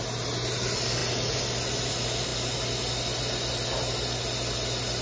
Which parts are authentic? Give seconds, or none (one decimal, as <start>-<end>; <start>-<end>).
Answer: 0.0-5.0